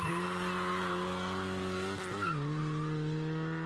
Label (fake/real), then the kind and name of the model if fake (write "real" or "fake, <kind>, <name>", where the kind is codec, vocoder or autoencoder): real